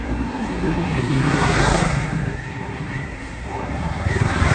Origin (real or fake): fake